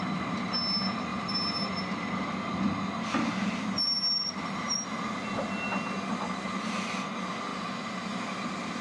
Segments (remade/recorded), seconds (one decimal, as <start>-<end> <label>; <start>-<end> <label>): 0.0-8.8 recorded